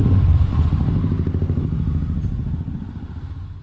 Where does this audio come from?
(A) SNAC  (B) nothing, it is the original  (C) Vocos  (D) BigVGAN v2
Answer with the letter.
D